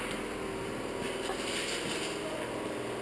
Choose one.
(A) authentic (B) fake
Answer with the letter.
A